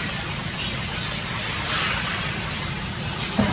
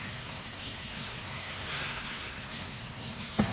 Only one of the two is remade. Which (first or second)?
second